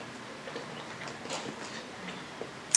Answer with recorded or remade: recorded